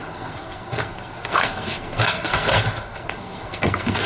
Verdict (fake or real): fake